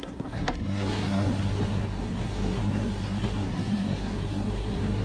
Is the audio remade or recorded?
remade